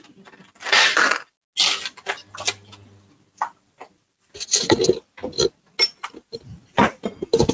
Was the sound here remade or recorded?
recorded